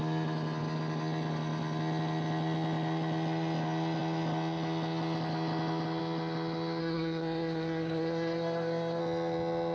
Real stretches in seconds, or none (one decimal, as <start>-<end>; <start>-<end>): 0.0-6.8; 9.0-9.7

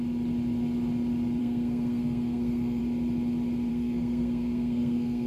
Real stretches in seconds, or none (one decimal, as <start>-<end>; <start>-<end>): 0.0-1.4; 2.8-3.7

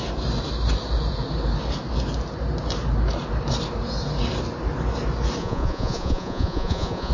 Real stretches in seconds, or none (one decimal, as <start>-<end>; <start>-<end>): 0.0-5.4

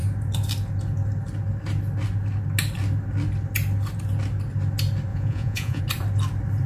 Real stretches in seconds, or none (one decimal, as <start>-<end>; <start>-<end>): 0.0-5.1; 5.8-6.7

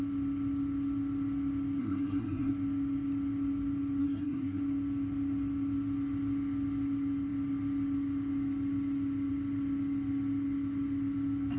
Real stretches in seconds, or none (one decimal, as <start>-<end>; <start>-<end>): 0.0-1.8; 2.5-4.0; 4.6-11.6